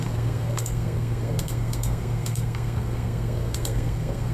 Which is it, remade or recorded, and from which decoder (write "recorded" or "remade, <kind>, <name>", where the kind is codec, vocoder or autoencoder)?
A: remade, codec, SNAC